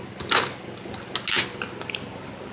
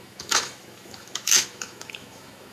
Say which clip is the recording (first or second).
first